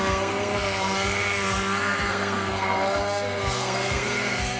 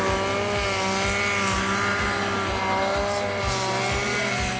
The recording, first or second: second